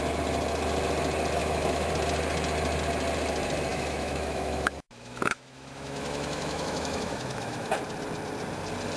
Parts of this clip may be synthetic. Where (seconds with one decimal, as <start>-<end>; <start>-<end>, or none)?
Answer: 1.4-1.9; 3.7-7.7